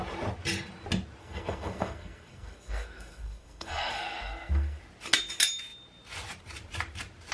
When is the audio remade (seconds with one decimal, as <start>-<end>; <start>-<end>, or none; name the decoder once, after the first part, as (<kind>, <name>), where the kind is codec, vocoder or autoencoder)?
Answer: 1.2-4.8 (codec, SNAC)